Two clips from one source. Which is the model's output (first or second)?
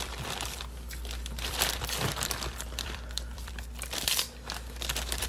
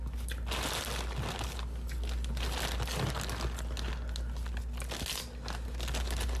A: first